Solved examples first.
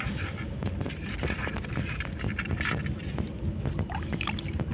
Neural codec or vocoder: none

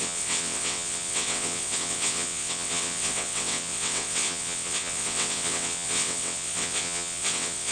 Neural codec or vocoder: vocoder, WaveNeXt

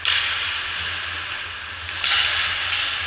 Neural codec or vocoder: none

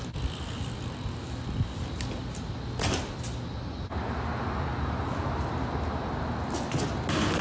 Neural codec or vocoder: none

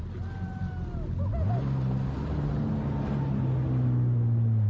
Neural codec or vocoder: none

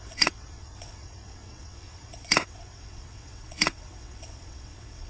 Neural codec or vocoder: vocoder, WaveNeXt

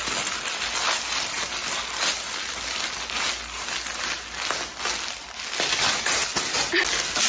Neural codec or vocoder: none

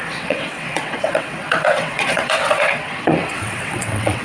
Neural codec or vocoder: vocoder, WaveNeXt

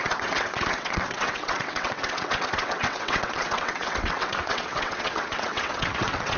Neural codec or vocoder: vocoder, WaveNeXt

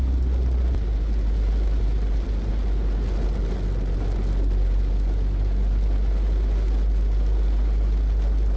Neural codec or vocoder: none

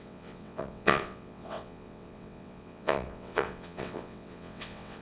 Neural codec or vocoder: vocoder, WaveNeXt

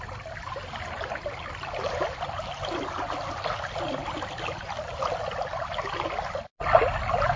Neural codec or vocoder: none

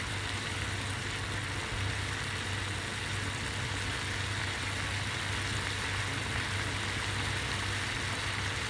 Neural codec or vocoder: none